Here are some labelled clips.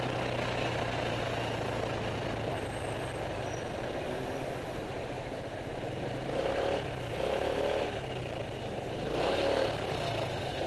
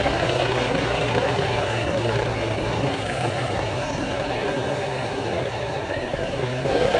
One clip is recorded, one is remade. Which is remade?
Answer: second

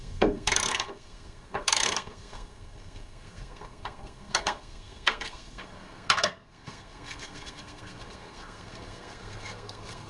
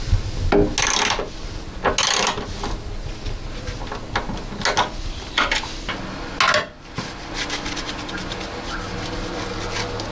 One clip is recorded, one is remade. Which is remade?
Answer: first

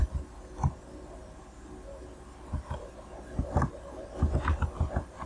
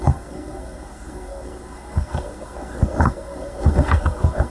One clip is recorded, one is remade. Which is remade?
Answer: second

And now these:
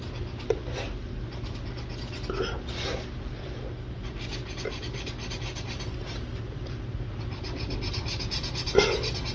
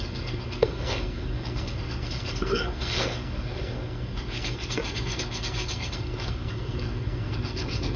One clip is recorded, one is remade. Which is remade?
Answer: second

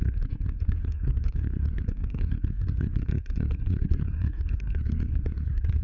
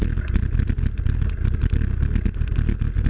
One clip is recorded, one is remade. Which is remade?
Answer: first